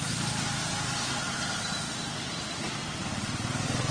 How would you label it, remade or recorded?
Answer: recorded